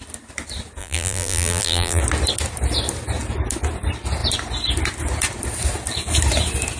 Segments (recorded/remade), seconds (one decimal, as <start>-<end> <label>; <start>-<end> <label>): 0.0-0.8 recorded; 0.8-2.0 remade; 2.0-6.8 recorded